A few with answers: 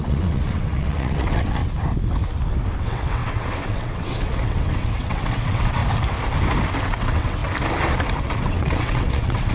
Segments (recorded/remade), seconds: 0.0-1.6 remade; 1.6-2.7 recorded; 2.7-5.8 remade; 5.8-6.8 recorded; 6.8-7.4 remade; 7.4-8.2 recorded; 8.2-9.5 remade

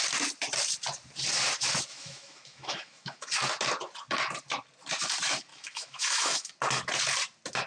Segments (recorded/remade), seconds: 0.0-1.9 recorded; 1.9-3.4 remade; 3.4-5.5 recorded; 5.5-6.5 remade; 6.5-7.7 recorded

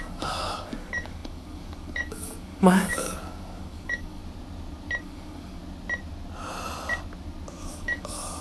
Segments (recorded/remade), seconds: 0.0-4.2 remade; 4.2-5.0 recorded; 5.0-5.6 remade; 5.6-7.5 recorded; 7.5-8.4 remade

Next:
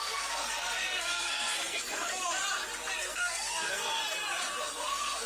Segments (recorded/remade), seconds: 0.0-2.4 remade; 2.4-3.0 recorded; 3.0-4.0 remade; 4.0-4.6 recorded; 4.6-5.3 remade

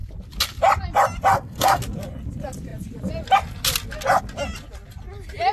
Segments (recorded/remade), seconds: 0.0-1.3 recorded; 1.3-1.8 remade; 1.8-5.5 recorded